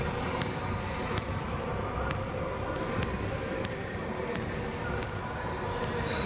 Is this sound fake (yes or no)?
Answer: yes